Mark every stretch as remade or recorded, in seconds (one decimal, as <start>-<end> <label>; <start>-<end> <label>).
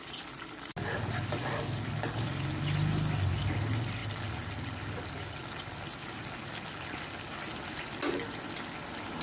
0.0-9.2 recorded